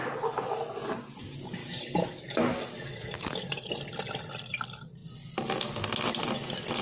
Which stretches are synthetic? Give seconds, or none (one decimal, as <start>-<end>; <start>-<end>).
1.6-3.7